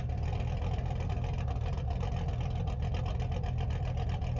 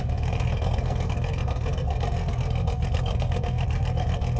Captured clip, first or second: first